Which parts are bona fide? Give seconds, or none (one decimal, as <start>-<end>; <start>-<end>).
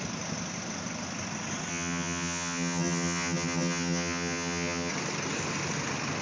0.0-1.7; 4.9-6.2